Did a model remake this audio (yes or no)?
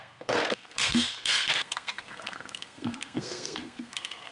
yes